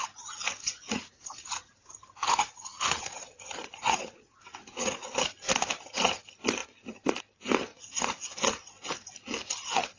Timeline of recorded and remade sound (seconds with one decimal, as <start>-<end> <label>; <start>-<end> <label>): 0.0-0.6 recorded; 0.6-5.1 remade; 5.1-7.7 recorded; 7.7-8.4 remade; 8.4-10.0 recorded